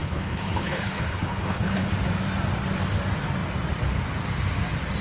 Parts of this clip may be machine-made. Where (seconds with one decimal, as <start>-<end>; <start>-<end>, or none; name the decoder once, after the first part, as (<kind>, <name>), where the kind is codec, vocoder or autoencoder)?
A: 0.0-1.9 (codec, HILCodec)